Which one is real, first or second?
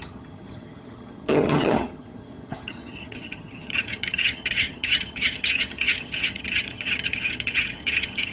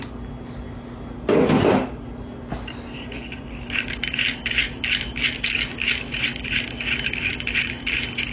second